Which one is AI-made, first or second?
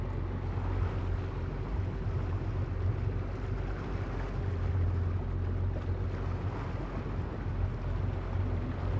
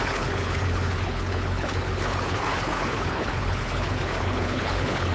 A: second